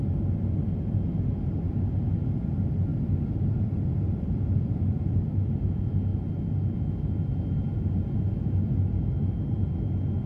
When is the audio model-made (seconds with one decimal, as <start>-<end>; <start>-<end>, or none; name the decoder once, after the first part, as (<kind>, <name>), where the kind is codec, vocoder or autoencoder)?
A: 2.9-5.6 (vocoder, BigVGAN v2)